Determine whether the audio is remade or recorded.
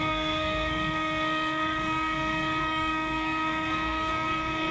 remade